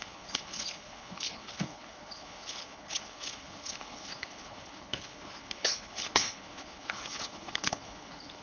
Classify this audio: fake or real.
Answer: fake